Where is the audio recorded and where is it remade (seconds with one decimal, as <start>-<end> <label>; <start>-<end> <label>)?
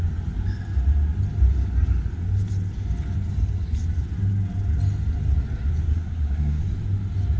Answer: 0.0-5.9 recorded; 5.9-6.6 remade; 6.6-7.4 recorded